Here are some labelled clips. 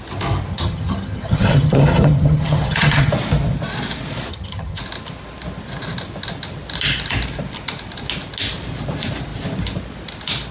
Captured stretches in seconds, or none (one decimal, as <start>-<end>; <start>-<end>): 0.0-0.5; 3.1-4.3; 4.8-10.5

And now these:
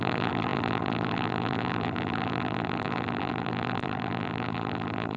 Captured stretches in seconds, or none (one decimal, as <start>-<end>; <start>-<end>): none

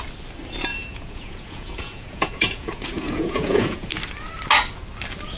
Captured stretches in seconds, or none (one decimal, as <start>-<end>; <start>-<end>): 0.0-0.7; 3.9-5.4

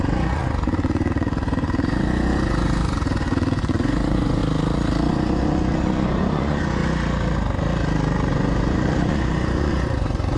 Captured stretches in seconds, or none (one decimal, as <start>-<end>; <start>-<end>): 4.4-5.1; 6.8-8.3

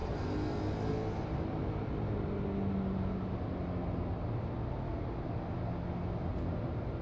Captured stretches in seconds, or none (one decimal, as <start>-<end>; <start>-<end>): 0.0-7.0

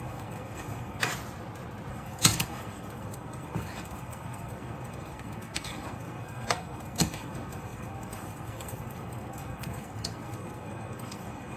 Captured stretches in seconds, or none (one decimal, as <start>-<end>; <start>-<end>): 1.1-1.9

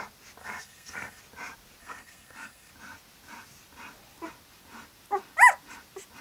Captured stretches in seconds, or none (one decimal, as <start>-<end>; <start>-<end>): 0.0-0.4; 1.2-1.8; 2.7-6.2

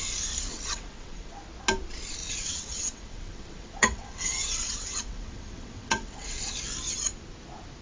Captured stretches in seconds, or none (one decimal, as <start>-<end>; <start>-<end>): 0.0-0.5; 1.4-2.2; 6.5-7.8